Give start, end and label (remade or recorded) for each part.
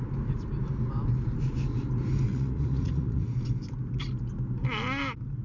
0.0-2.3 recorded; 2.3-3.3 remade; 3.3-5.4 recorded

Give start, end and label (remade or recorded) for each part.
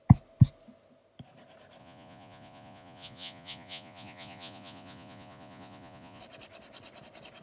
0.0-1.8 recorded; 1.8-6.2 remade; 6.2-7.4 recorded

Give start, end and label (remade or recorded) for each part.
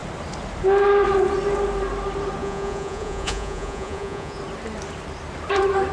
0.0-2.4 recorded; 2.4-4.4 remade; 4.4-5.9 recorded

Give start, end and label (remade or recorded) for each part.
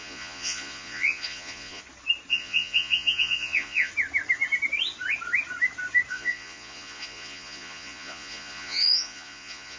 0.0-1.8 remade; 1.8-2.3 recorded; 2.3-3.9 remade; 3.9-6.1 recorded; 6.1-9.8 remade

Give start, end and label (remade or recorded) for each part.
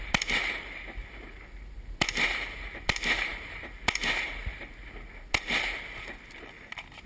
0.0-7.1 recorded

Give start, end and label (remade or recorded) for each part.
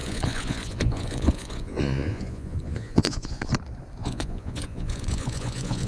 0.0-3.5 remade; 3.5-4.0 recorded; 4.0-5.9 remade